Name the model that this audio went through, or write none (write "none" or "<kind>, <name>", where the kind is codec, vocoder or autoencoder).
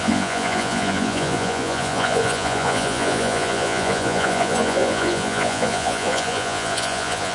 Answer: vocoder, Vocos